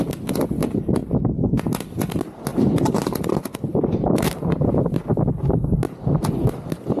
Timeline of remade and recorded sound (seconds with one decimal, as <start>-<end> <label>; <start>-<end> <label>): 0.0-3.7 recorded; 3.7-5.1 remade; 5.1-7.0 recorded